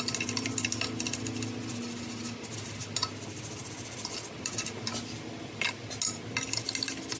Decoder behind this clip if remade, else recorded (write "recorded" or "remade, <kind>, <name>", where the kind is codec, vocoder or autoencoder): recorded